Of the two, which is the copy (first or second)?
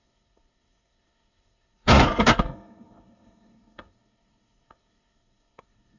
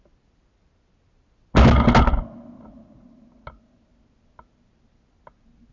first